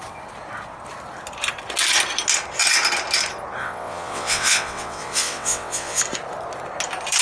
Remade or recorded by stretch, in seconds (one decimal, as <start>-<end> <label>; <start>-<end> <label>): 0.0-3.6 recorded; 3.6-6.0 remade; 6.0-7.2 recorded